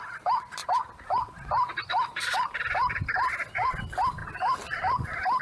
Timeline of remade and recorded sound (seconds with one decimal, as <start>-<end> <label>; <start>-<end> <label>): 0.0-5.4 recorded